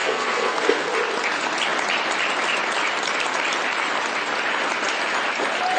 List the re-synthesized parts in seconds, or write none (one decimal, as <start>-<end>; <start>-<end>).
0.0-0.9